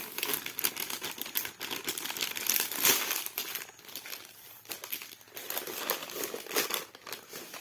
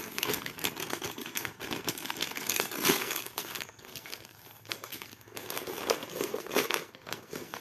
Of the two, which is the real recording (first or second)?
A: first